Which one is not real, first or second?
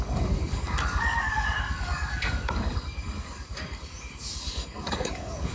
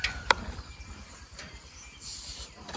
first